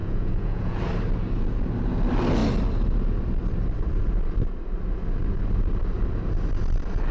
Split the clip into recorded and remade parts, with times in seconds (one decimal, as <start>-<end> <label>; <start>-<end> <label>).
0.0-0.8 remade; 0.8-7.1 recorded